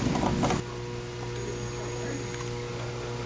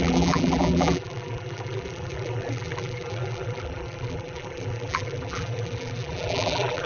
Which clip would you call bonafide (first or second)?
first